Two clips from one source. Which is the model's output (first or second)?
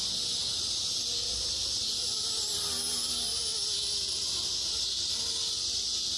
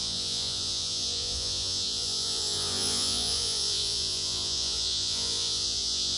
second